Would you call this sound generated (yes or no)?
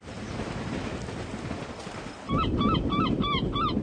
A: no